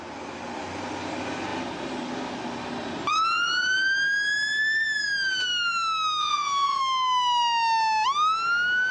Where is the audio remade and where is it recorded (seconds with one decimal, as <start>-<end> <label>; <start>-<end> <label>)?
0.0-6.2 recorded; 6.2-6.8 remade; 6.8-8.9 recorded